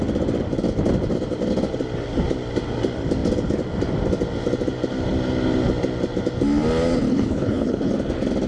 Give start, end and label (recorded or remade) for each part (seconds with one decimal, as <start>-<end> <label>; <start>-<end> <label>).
0.0-7.1 recorded; 7.1-7.9 remade; 7.9-8.5 recorded